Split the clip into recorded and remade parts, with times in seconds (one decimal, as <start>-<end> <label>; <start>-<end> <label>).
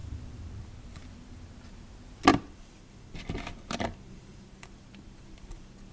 0.0-0.6 remade; 0.6-2.3 recorded; 2.3-5.9 remade